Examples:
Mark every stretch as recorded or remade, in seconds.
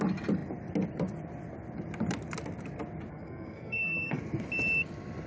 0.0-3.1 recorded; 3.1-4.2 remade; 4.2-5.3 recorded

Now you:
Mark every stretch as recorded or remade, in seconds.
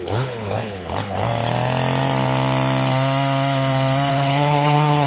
0.0-1.3 remade; 1.3-4.1 recorded; 4.1-5.1 remade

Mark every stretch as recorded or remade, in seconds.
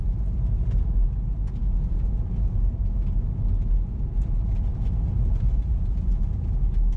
0.0-7.0 recorded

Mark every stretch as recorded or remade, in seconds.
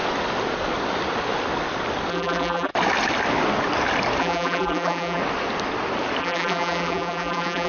0.0-2.1 recorded; 2.1-2.7 remade; 2.7-4.2 recorded; 4.2-5.2 remade; 5.2-6.2 recorded; 6.2-7.7 remade